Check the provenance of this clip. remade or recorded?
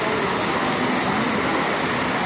recorded